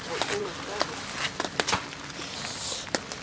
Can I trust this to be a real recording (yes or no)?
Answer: yes